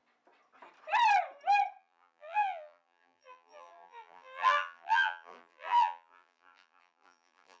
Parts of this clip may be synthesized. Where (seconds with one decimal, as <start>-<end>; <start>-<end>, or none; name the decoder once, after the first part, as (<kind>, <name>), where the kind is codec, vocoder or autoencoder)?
1.8-7.6 (vocoder, BigVGAN v2)